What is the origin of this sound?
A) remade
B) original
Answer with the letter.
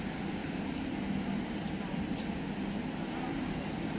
A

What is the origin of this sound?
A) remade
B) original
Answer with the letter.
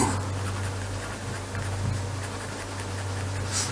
B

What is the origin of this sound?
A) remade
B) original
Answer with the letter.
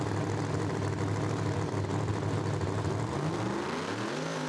B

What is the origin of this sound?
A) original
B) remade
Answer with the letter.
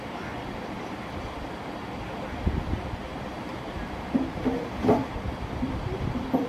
B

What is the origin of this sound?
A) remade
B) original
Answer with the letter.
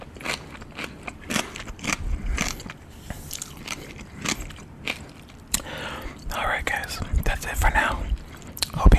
A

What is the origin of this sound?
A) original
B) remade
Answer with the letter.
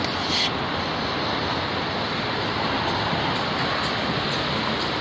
A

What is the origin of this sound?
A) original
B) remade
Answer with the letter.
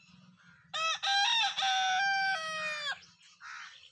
A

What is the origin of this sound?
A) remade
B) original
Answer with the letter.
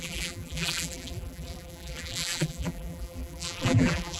A